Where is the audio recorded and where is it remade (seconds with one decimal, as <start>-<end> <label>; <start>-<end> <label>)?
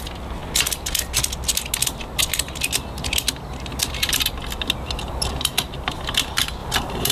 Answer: 0.0-6.6 recorded; 6.6-7.1 remade